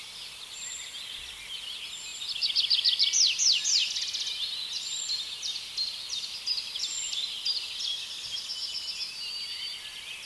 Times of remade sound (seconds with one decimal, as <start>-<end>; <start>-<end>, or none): none